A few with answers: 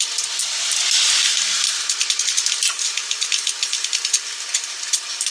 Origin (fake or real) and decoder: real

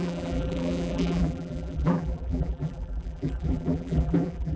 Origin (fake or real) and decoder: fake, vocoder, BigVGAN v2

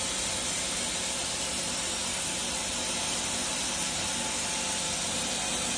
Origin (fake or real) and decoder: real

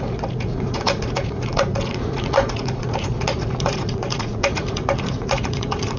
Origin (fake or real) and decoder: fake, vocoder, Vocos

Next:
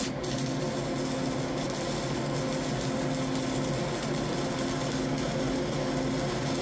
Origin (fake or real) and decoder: real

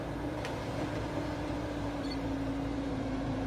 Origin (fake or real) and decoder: fake, vocoder, BigVGAN v2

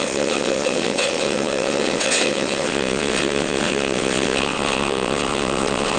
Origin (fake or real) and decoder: fake, vocoder, WaveNeXt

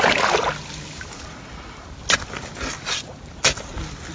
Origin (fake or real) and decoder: real